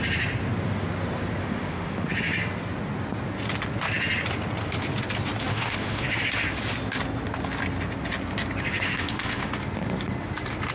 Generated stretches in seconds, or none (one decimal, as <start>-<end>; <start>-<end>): 1.4-2.1; 5.5-6.2; 8.7-9.5